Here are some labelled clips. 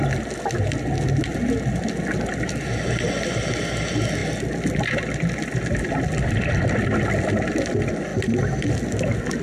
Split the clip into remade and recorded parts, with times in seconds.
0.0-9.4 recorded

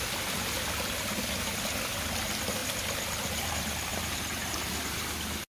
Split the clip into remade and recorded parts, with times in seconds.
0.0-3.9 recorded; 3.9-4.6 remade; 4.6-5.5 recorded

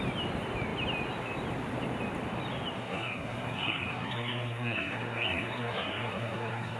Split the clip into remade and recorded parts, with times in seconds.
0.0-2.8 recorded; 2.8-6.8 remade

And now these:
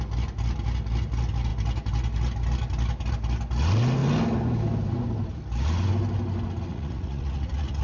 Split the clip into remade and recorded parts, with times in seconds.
0.0-6.7 recorded; 6.7-7.8 remade

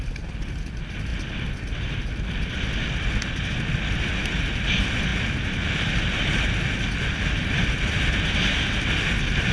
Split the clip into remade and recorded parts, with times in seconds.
0.0-9.5 recorded

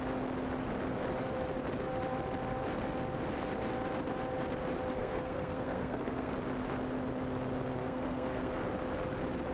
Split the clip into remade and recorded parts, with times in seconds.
0.0-5.0 recorded; 5.0-6.3 remade; 6.3-7.8 recorded; 7.8-8.7 remade; 8.7-9.5 recorded

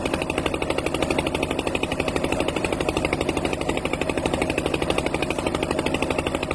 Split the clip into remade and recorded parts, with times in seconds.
0.0-1.9 recorded; 1.9-5.8 remade; 5.8-6.5 recorded

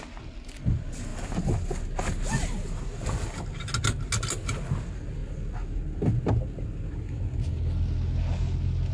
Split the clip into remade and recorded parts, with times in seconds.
0.0-8.9 recorded